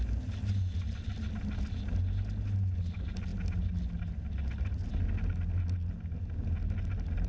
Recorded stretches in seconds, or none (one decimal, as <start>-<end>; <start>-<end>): 0.0-7.3